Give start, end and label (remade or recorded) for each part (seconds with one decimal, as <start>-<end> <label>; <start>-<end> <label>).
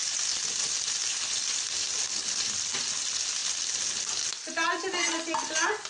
0.0-5.9 recorded